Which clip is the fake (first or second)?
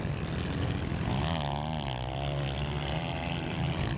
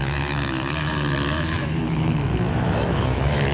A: second